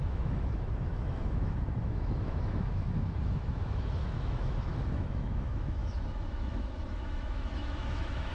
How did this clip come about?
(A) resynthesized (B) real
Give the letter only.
A